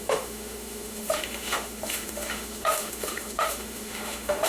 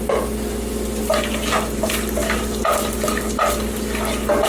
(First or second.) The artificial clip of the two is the first